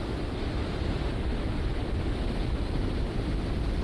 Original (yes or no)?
yes